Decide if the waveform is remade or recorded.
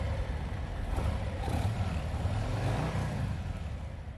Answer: remade